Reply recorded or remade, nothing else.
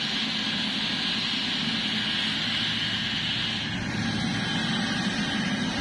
recorded